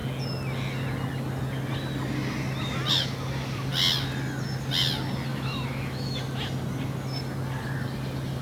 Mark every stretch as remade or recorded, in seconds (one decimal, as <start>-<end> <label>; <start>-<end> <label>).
0.0-5.3 recorded; 5.3-6.2 remade; 6.2-8.4 recorded